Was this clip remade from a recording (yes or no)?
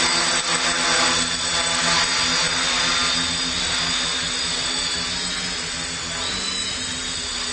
no